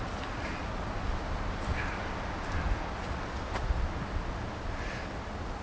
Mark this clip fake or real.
real